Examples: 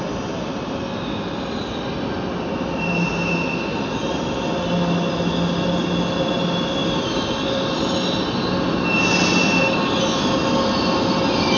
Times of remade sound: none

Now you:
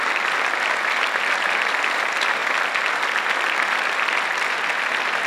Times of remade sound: none

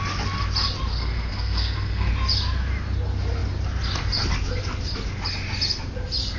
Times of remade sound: 0.9-2.1 (codec, SNAC)

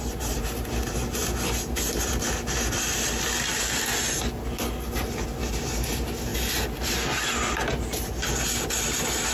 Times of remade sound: none